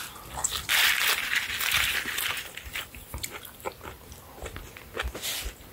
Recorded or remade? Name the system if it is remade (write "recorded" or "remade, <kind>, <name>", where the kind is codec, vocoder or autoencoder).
recorded